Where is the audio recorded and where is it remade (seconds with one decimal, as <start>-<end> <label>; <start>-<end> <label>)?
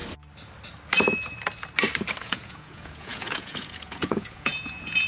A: 0.0-2.2 recorded; 2.2-5.1 remade